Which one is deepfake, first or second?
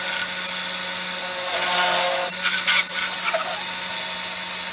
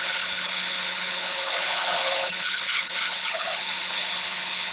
second